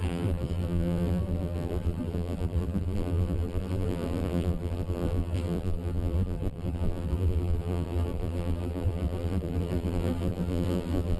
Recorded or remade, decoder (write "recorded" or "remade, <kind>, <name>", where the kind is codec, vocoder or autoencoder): remade, vocoder, BigVGAN v2